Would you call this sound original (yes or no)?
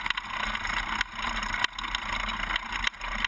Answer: yes